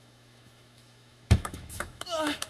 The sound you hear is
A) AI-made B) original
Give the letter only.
A